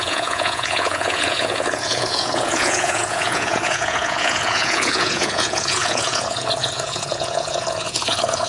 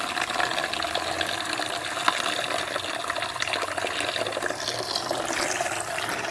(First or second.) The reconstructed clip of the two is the first